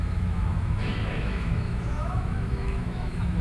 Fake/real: fake